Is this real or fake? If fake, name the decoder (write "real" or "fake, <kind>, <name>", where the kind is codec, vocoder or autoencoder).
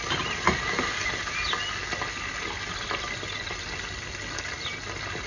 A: real